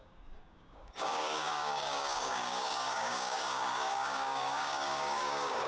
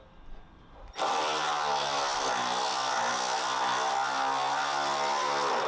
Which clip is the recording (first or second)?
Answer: second